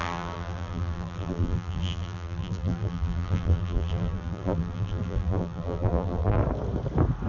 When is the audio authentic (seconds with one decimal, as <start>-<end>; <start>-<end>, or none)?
6.4-7.3